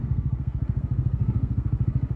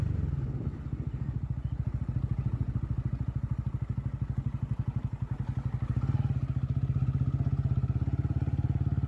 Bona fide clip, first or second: second